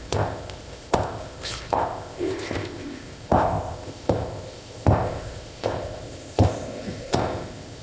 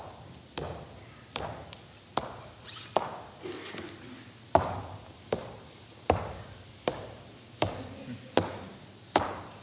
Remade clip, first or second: first